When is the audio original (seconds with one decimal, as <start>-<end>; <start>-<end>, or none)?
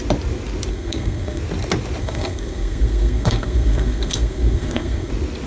0.0-0.7; 1.4-2.0; 5.1-5.5